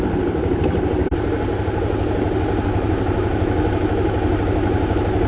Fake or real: real